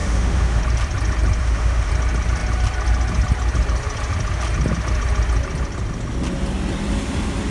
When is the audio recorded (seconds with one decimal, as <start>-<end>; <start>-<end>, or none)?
0.6-1.4; 1.9-7.5